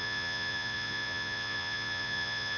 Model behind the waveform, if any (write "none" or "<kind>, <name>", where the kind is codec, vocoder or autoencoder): vocoder, Vocos